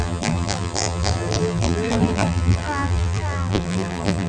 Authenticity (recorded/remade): remade